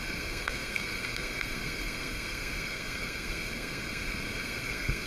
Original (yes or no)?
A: no